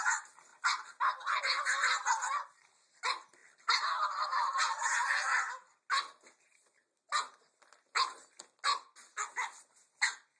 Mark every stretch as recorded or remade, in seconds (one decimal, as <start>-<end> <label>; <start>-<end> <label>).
0.0-10.4 recorded